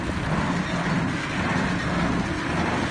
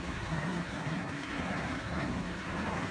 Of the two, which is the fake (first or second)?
second